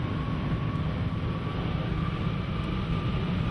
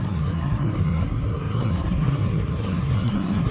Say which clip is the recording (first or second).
first